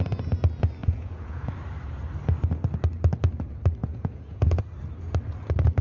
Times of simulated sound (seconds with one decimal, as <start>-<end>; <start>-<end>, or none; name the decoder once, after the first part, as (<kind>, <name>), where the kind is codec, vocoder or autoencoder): 0.8-1.5 (vocoder, Vocos); 3.8-4.6